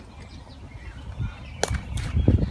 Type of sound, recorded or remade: recorded